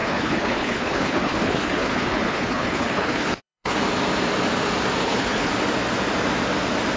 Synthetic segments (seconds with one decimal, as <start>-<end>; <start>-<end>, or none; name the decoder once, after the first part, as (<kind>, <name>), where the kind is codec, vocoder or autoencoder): 0.0-3.8 (codec, HILCodec); 5.0-5.5

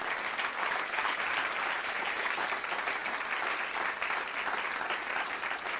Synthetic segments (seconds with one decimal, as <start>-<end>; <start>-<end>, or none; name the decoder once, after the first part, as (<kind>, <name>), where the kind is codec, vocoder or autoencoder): 0.6-1.2 (codec, HILCodec); 1.8-2.4

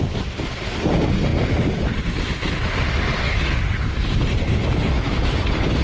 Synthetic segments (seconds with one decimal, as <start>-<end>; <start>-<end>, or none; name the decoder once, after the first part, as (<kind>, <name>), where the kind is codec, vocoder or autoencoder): none

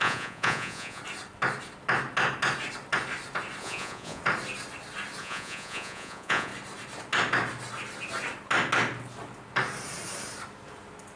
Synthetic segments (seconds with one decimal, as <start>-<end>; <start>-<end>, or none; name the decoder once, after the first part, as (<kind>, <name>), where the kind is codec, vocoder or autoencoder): 0.0-1.0 (vocoder, Vocos); 3.6-4.2; 5.2-6.5

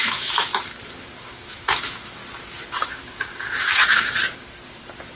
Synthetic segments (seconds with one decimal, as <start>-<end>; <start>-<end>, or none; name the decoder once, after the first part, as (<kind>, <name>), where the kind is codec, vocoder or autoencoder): 0.0-0.5 (autoencoder, DAC-VAE); 1.0-2.2; 3.0-4.2

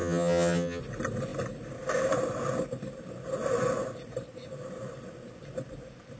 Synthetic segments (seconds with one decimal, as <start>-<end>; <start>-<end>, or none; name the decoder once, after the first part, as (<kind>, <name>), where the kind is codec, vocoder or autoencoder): 0.0-0.8 (vocoder, HiFi-GAN)